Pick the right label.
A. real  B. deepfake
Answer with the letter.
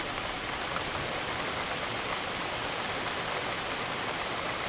A